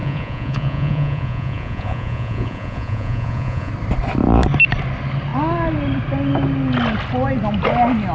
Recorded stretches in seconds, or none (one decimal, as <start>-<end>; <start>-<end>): 3.7-8.1